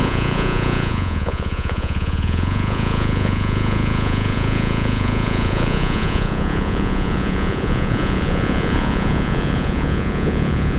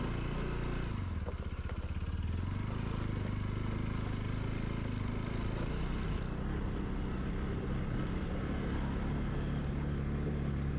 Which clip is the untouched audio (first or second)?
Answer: second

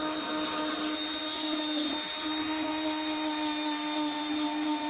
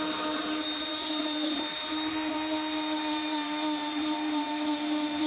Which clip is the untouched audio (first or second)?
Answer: first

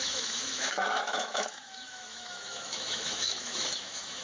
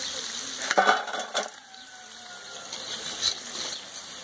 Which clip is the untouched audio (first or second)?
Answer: second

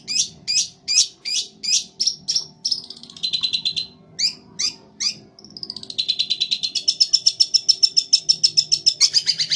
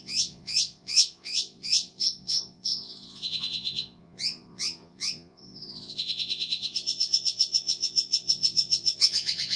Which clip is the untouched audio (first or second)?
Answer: first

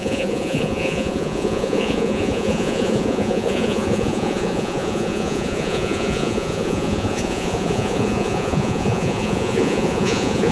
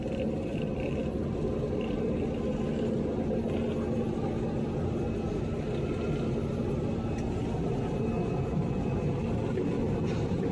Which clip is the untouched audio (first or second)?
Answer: second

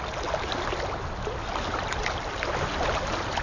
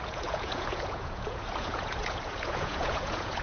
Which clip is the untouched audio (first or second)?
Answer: first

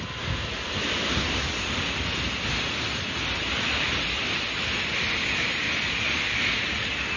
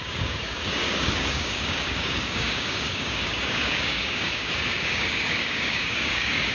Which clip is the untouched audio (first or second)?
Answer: first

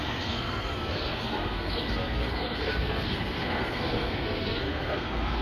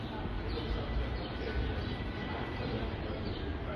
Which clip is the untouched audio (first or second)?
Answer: second